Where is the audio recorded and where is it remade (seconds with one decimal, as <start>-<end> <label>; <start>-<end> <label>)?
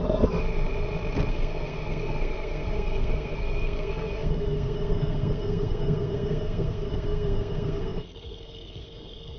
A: 0.0-1.3 recorded; 1.3-9.4 remade